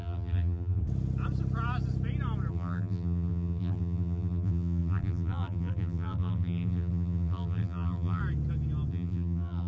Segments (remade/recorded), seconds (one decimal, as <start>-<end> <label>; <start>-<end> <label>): 0.0-0.8 remade; 0.8-2.5 recorded; 2.5-8.2 remade; 8.2-8.9 recorded; 8.9-9.7 remade